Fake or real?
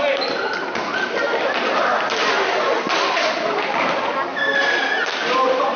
real